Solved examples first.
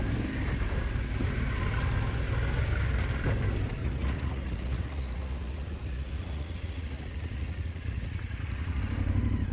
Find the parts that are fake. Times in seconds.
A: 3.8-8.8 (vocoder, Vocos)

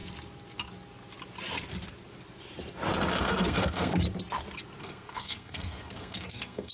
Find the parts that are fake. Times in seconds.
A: 3.2-3.9 (codec, SNAC); 4.8-6.7

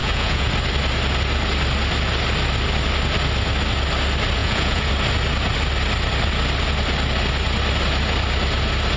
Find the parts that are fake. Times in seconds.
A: 0.0-0.5 (vocoder, Vocos); 4.4-4.9

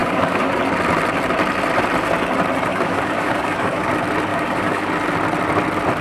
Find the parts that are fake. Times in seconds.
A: 0.0-0.6 (codec, DAC); 2.7-3.9; 4.3-4.9

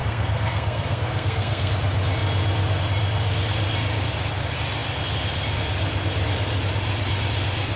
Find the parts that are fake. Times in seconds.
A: 0.0-1.7 (codec, SNAC)